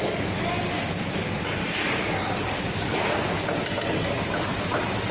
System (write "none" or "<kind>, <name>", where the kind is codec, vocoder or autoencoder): none